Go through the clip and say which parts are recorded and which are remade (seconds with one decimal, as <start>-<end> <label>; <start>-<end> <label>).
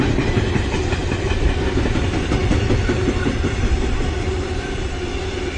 0.0-5.6 recorded